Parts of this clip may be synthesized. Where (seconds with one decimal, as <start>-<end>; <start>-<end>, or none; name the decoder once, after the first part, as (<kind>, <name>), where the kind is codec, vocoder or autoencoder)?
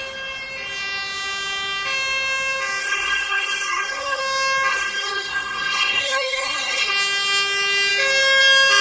2.8-4.2 (codec, SNAC); 4.7-6.9